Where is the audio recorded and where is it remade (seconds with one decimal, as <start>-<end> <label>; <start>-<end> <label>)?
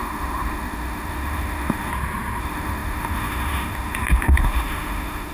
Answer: 0.0-1.9 remade; 1.9-2.4 recorded; 2.4-5.3 remade